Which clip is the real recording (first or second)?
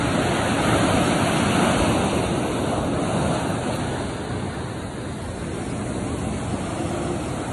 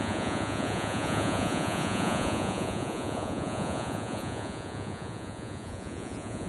first